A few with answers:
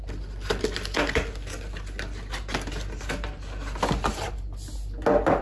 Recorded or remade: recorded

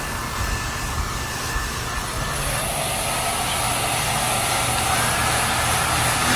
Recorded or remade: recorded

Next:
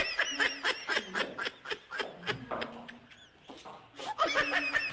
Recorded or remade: recorded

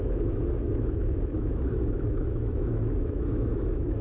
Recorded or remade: remade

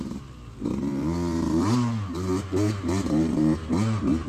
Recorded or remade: remade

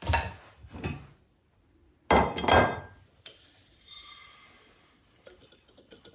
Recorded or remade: recorded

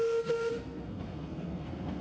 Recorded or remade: remade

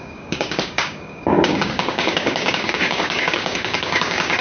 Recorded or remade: remade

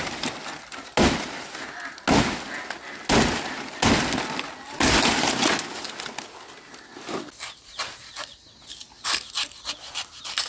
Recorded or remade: recorded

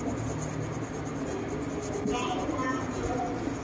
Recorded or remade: recorded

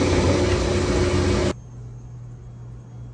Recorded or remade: recorded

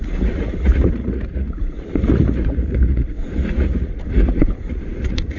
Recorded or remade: remade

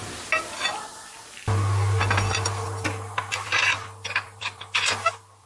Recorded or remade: recorded